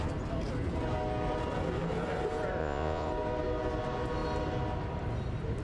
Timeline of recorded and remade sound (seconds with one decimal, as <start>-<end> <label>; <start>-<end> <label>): 0.0-2.6 recorded; 2.6-3.1 remade; 3.1-5.6 recorded